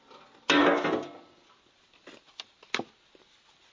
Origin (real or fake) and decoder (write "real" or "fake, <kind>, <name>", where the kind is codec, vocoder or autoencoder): real